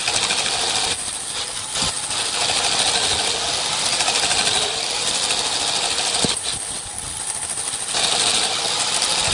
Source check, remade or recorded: recorded